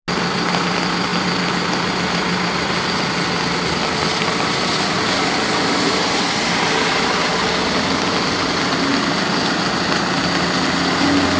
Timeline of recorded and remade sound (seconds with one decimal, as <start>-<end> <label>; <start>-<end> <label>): 0.0-11.4 recorded